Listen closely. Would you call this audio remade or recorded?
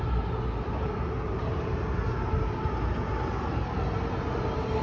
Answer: recorded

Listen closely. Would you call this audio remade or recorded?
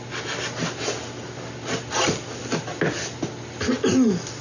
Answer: recorded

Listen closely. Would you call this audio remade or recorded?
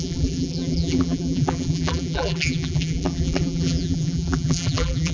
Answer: remade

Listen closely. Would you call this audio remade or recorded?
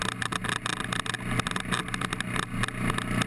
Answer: recorded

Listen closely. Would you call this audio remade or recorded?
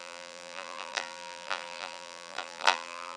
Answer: remade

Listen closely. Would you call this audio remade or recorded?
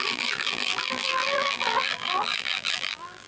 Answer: remade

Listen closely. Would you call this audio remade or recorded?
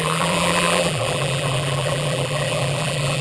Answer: remade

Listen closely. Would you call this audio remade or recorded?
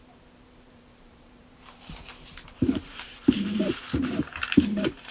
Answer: remade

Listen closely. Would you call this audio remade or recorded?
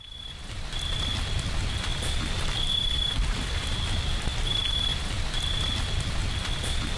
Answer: recorded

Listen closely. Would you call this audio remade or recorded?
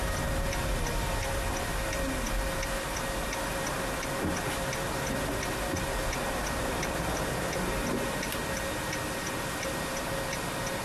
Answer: recorded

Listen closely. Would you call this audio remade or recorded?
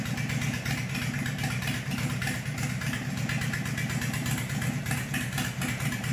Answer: recorded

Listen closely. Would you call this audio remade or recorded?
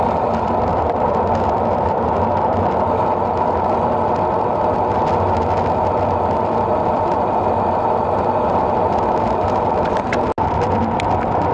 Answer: recorded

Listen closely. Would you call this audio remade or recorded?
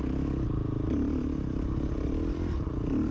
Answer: recorded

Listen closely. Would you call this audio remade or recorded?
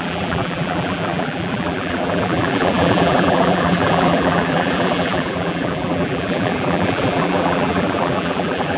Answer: remade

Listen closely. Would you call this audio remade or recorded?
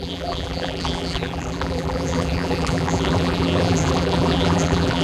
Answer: remade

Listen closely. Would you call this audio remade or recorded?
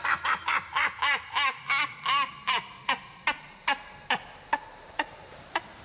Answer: remade